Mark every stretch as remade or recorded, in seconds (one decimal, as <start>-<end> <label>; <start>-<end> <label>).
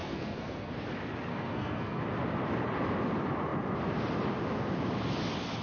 0.0-0.7 remade; 0.7-1.3 recorded; 1.3-2.0 remade; 2.0-5.6 recorded